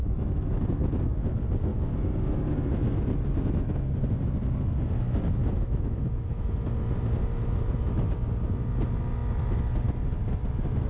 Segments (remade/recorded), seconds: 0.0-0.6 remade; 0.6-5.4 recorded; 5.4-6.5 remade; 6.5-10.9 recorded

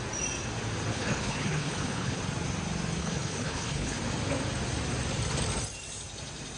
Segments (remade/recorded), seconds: 0.0-0.9 recorded; 0.9-2.2 remade; 2.2-3.0 recorded; 3.0-4.0 remade; 4.0-6.6 recorded

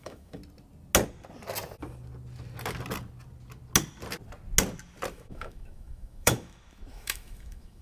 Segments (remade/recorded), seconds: 0.0-0.4 remade; 0.4-5.1 recorded; 5.1-7.8 remade

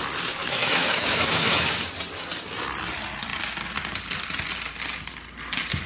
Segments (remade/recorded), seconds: 0.0-0.4 recorded; 0.4-1.7 remade; 1.7-5.9 recorded

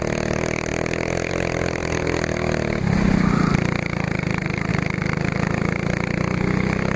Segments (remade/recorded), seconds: 0.0-7.0 recorded

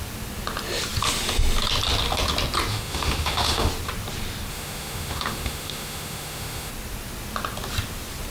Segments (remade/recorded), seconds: 0.0-2.7 recorded; 2.7-3.7 remade; 3.7-4.5 recorded; 4.5-6.7 remade; 6.7-8.3 recorded